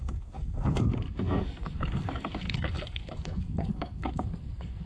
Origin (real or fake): fake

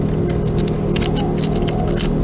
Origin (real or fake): real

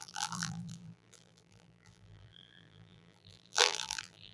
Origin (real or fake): fake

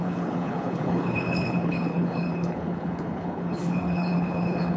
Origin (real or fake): fake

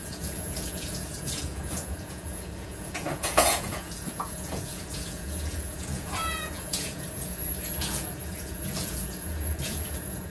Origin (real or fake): fake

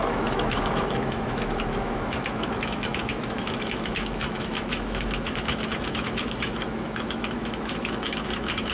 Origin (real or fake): fake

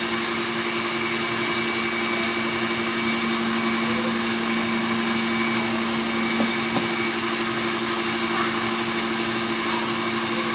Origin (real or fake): real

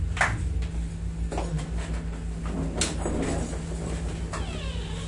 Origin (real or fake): real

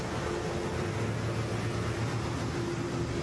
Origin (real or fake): real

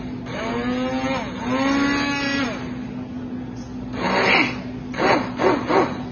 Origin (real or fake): real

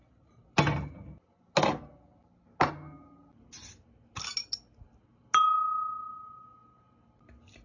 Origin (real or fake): real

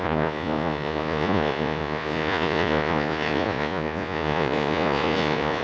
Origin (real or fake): fake